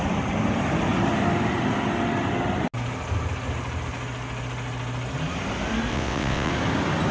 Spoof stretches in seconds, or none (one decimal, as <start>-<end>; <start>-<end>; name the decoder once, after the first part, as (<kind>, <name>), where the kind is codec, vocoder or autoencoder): 5.9-6.5 (vocoder, WaveNeXt)